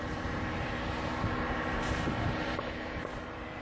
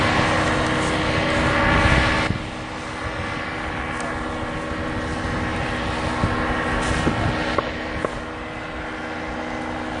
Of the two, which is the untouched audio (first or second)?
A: second